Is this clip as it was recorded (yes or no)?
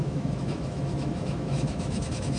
no